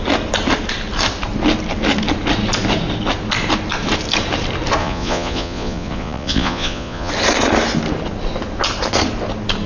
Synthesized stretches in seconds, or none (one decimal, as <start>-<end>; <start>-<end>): 4.8-7.1